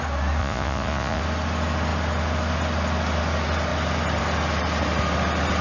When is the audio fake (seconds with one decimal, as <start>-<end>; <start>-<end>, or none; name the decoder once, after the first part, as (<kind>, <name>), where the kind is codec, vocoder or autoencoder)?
0.4-1.2 (vocoder, Vocos)